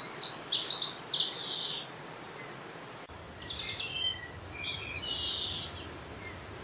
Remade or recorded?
recorded